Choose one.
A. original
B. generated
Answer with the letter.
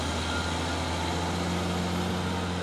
A